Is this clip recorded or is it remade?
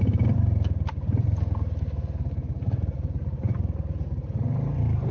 recorded